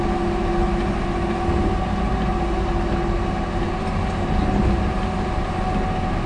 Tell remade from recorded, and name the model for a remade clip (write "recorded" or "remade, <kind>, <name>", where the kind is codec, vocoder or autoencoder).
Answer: recorded